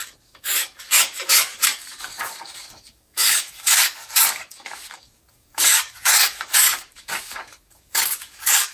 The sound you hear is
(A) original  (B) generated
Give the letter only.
B